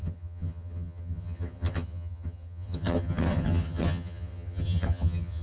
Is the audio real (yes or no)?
no